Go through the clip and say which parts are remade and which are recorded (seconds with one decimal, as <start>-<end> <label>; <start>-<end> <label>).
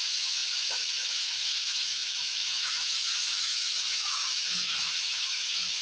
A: 0.0-5.8 remade